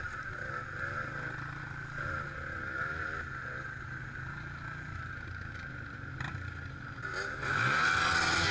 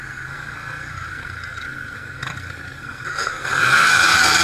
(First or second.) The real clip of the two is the first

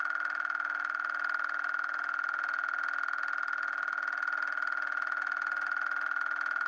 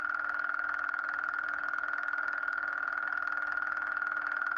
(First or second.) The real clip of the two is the first